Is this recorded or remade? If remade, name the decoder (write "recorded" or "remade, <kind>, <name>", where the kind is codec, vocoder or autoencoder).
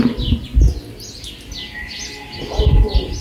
recorded